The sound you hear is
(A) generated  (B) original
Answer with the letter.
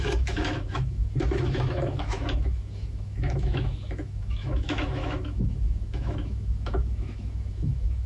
A